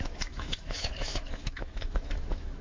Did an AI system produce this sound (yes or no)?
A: yes